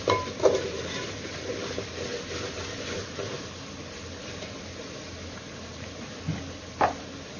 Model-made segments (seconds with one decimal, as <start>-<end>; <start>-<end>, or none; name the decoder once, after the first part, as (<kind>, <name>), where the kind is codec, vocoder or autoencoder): none